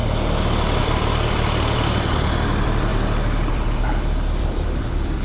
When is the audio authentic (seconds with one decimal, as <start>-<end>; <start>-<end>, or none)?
0.0-0.8; 2.9-3.5